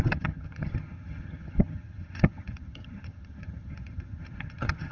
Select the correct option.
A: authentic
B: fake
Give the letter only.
B